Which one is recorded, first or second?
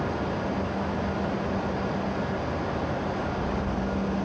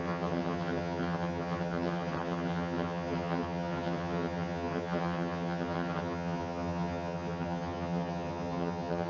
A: first